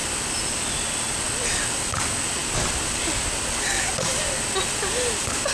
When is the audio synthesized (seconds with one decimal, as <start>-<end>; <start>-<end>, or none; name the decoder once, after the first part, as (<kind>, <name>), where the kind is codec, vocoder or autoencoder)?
none